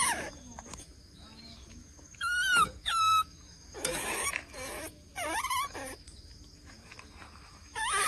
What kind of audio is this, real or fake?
fake